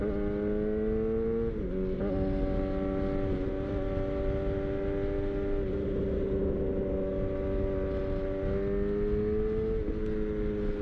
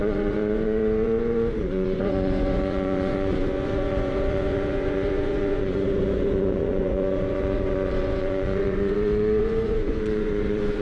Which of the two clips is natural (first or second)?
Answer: first